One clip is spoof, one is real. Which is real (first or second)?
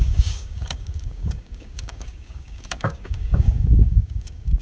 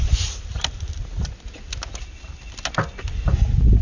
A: second